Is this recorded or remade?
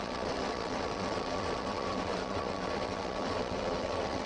remade